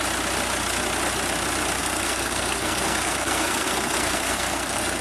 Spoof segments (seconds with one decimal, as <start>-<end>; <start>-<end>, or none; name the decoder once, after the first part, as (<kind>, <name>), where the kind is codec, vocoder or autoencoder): 1.8-5.0 (codec, SNAC)